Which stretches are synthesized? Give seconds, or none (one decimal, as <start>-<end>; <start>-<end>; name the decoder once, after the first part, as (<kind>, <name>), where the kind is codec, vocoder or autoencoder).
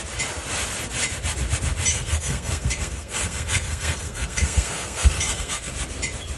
1.9-5.7 (codec, SNAC)